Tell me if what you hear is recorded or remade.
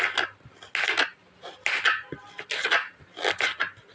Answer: recorded